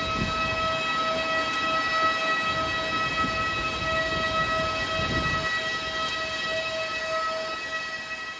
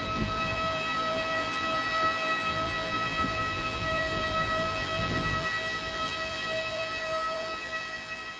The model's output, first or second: second